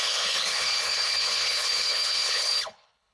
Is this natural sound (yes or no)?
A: no